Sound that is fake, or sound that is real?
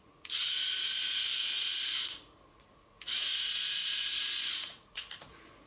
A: fake